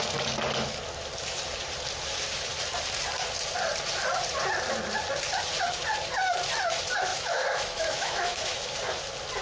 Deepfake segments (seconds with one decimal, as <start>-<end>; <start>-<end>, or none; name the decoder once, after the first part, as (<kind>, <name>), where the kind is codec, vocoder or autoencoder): 7.1-8.6 (autoencoder, DAC-VAE)